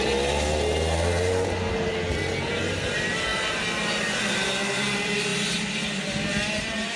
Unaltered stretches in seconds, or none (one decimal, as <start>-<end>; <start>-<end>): 0.0-7.0